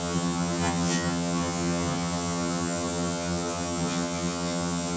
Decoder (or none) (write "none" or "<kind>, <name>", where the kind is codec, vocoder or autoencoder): vocoder, HiFi-GAN